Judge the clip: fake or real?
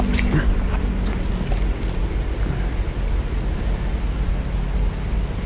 real